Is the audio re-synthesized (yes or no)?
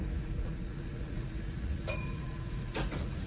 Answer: yes